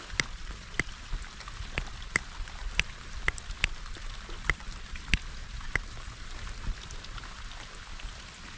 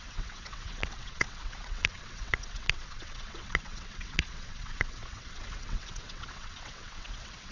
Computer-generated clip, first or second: second